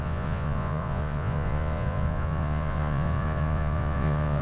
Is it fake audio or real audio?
fake